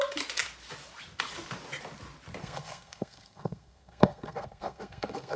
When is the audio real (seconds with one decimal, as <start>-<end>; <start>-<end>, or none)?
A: 0.0-2.4

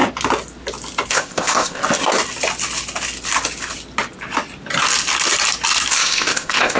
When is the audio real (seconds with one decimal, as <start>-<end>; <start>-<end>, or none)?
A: 0.0-1.1; 1.8-5.9

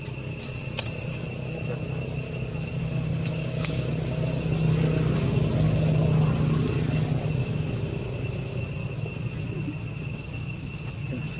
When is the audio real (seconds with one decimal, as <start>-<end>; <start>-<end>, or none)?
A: 0.0-2.8; 3.9-7.4; 8.6-10.1; 10.9-11.4

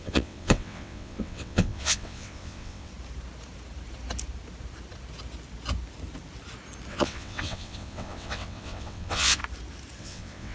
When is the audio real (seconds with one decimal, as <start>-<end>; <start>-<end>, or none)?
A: 2.9-6.9; 9.4-10.0

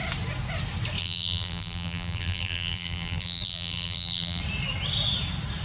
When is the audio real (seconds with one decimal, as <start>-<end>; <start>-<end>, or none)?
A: 0.0-1.0; 4.4-5.6

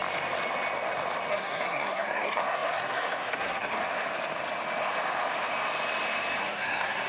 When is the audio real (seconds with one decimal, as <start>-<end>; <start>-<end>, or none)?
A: 0.0-1.3; 3.8-6.4